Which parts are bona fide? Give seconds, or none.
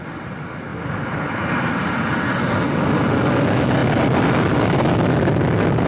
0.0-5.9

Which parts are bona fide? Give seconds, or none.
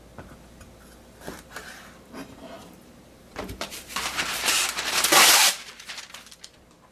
0.0-2.6; 5.9-6.9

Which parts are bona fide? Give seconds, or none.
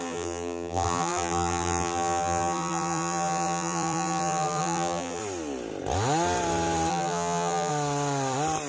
5.2-6.9; 7.7-8.7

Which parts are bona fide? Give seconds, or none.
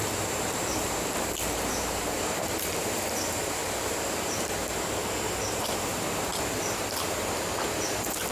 3.6-5.5; 6.3-6.9